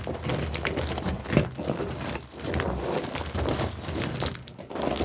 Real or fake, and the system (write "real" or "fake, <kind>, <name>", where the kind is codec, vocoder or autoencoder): real